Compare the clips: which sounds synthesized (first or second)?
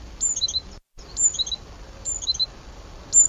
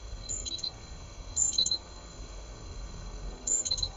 second